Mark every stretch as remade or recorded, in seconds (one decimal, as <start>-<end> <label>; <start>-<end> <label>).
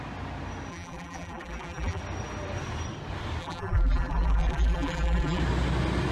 0.0-0.7 recorded; 0.7-2.0 remade; 2.0-3.4 recorded; 3.4-5.4 remade; 5.4-6.1 recorded